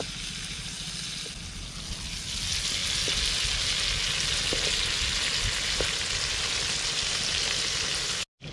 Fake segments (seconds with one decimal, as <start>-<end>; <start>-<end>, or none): none